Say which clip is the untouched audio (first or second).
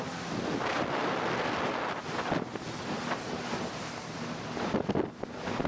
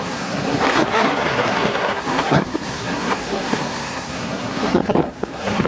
first